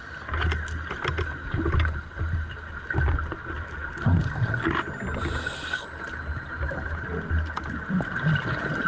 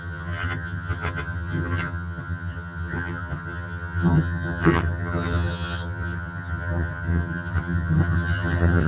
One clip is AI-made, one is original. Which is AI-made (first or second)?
second